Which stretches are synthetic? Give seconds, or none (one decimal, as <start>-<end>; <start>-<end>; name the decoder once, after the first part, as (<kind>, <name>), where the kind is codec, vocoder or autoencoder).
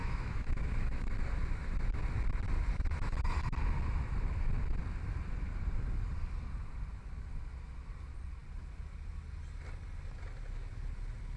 0.0-1.1 (autoencoder, DAC-VAE)